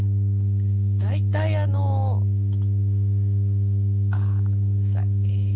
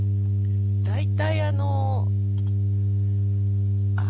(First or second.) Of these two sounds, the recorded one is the second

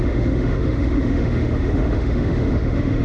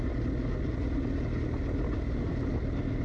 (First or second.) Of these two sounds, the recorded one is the second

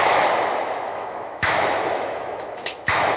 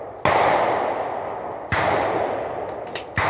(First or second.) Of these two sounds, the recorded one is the second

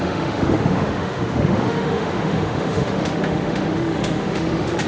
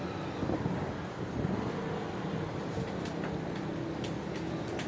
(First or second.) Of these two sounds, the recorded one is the second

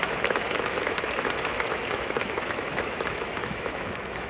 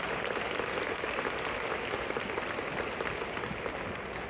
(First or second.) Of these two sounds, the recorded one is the second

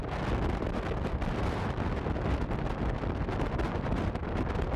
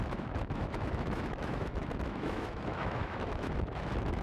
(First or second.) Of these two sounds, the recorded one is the first